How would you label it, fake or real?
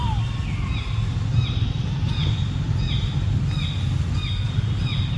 real